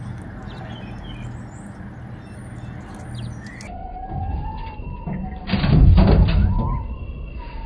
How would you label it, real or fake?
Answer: real